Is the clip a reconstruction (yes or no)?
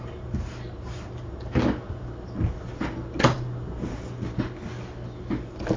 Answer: no